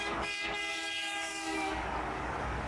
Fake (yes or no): yes